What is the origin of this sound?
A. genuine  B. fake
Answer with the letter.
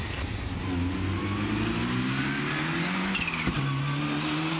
A